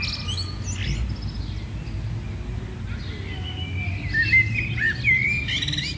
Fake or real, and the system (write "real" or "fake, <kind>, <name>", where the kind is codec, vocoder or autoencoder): real